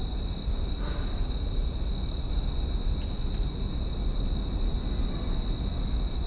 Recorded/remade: recorded